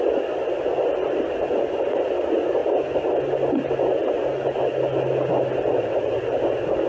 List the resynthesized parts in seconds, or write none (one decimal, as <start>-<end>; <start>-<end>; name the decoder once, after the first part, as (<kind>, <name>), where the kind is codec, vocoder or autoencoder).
none